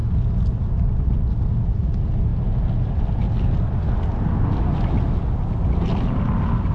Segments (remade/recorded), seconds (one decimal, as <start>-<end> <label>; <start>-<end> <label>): 0.0-6.7 recorded